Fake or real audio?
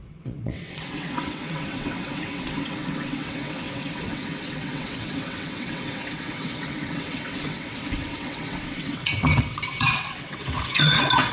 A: fake